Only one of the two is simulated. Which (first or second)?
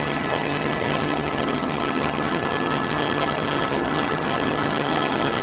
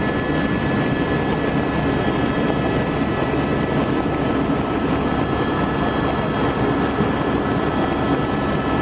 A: first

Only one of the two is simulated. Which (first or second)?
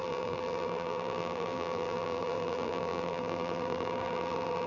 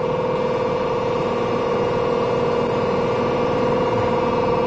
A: first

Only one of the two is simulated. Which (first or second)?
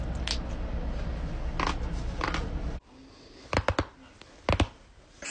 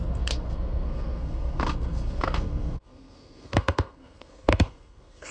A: second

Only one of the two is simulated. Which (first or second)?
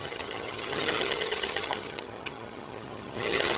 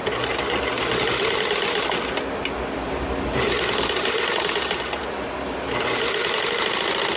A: first